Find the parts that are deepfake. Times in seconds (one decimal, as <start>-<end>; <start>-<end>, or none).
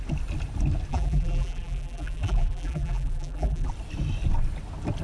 0.9-3.7